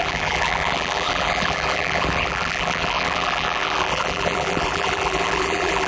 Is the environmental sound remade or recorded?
remade